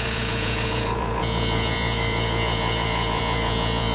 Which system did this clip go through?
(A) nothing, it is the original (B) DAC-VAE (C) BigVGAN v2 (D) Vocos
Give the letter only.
D